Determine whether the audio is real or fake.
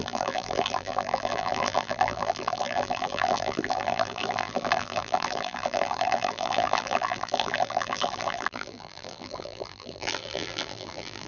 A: fake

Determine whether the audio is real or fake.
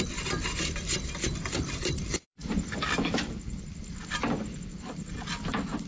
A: fake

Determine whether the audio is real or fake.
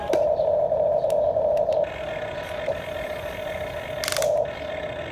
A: real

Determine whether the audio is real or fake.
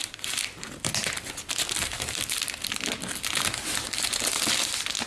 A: real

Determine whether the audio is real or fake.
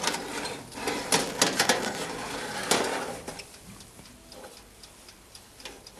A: fake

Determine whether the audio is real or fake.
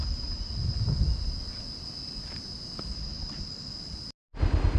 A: real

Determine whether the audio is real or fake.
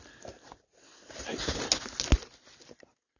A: real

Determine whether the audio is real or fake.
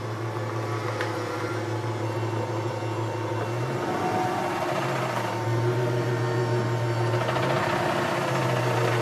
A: real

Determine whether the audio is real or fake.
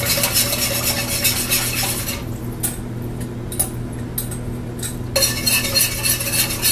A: real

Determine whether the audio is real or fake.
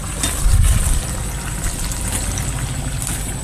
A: real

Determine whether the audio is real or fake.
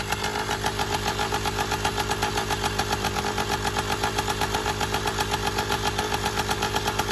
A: real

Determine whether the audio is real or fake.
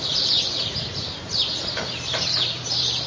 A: fake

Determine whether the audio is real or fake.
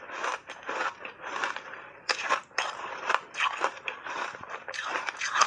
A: fake